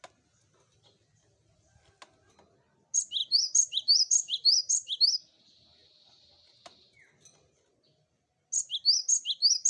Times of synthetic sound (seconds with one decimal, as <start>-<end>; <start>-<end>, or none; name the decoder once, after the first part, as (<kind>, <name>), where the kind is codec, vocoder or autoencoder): 3.2-5.0 (vocoder, BigVGAN v2)